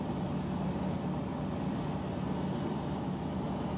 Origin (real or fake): real